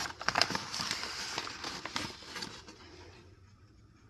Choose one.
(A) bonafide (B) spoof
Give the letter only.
A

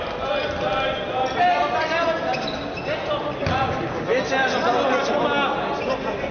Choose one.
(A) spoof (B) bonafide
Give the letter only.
B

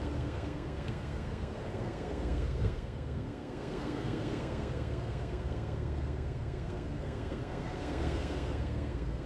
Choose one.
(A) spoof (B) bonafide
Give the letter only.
A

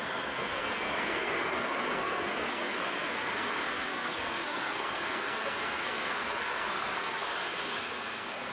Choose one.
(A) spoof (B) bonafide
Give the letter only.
A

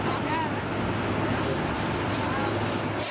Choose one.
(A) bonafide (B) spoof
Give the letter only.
A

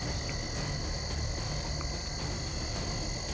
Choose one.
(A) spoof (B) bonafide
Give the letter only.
B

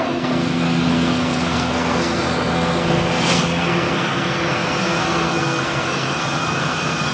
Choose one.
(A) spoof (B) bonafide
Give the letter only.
A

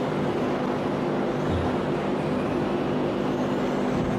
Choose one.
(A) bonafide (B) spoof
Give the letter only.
A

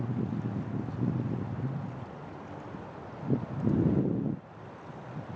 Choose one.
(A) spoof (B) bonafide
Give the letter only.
B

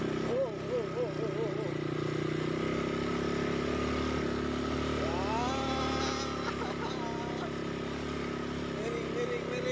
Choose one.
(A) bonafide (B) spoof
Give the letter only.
A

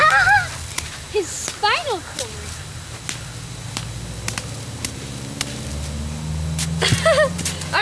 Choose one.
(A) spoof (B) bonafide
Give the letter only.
B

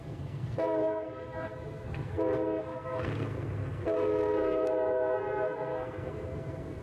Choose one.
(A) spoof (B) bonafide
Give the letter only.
A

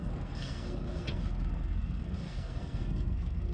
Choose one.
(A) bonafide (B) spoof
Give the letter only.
B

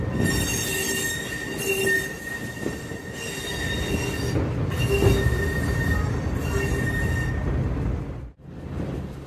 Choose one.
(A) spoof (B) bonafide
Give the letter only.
B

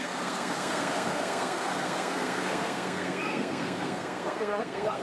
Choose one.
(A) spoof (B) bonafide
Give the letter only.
A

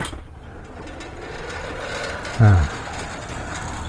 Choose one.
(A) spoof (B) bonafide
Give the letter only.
B